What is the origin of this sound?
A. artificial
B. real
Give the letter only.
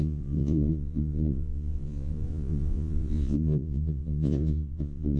A